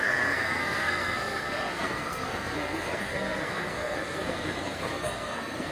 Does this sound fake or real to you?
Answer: fake